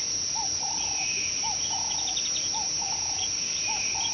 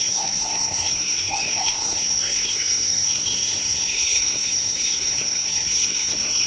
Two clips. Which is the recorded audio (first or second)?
first